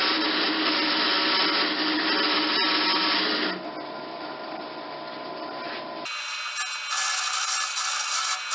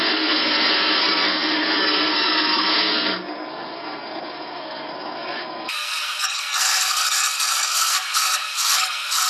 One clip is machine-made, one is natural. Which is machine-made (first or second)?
second